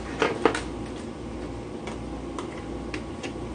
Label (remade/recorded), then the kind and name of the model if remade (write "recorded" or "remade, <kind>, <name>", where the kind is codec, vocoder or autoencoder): recorded